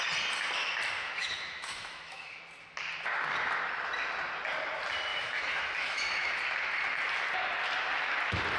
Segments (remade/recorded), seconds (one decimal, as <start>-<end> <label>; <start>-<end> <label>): 0.0-1.0 recorded; 1.0-2.4 remade; 2.4-5.1 recorded; 5.1-6.3 remade; 6.3-8.6 recorded

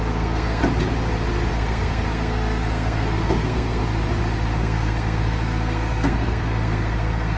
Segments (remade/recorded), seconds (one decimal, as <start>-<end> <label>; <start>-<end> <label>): 0.0-0.6 remade; 0.6-1.5 recorded; 1.5-3.8 remade; 3.8-4.6 recorded; 4.6-7.4 remade

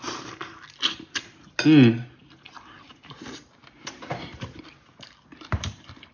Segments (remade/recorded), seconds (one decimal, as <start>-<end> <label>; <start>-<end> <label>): 0.0-2.2 recorded; 2.2-4.7 remade; 4.7-5.3 recorded; 5.3-6.1 remade

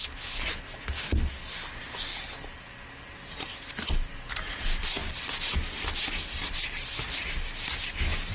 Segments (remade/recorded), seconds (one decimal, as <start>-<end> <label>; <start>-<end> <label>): 0.0-8.3 recorded

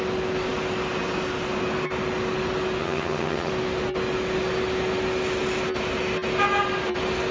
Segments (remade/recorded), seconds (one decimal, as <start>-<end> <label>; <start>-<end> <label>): 0.0-2.8 recorded; 2.8-3.5 remade; 3.5-7.3 recorded

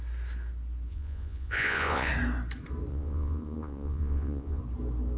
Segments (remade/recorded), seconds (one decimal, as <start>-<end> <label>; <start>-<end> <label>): 0.0-0.9 recorded; 0.9-2.1 remade; 2.1-2.9 recorded; 2.9-4.6 remade; 4.6-5.2 recorded

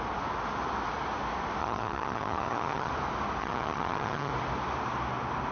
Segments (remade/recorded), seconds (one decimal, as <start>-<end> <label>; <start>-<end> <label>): 0.0-1.6 recorded; 1.6-2.9 remade; 2.9-3.4 recorded; 3.4-4.3 remade; 4.3-5.5 recorded

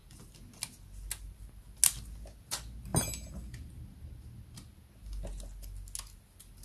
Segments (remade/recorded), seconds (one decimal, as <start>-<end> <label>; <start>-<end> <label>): 0.0-6.6 recorded